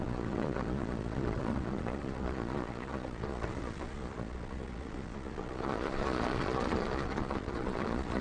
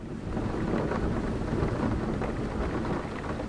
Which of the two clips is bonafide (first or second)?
second